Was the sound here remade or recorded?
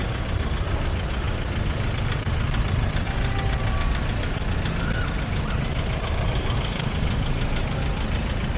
recorded